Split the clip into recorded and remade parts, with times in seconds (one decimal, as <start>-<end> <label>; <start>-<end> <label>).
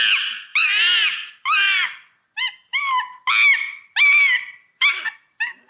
0.0-5.7 recorded